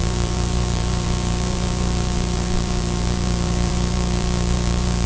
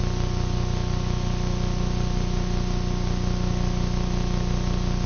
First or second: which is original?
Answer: second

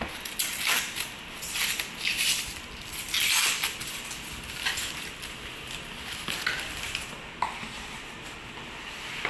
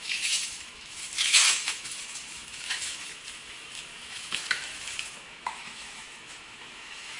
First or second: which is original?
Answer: first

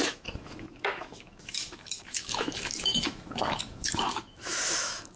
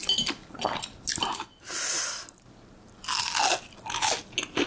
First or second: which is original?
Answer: second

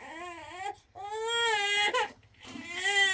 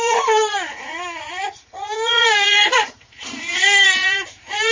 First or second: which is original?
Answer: first